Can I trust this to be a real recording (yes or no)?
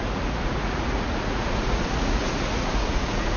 no